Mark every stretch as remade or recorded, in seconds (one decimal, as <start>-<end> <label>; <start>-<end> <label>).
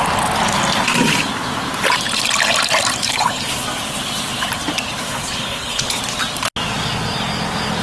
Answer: 0.0-3.0 recorded; 3.0-3.5 remade; 3.5-5.0 recorded; 5.0-6.0 remade; 6.0-7.8 recorded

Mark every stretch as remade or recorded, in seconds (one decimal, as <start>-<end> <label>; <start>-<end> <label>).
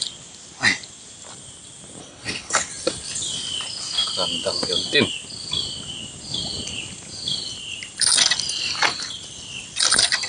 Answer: 0.0-2.0 recorded; 2.0-2.7 remade; 2.7-10.3 recorded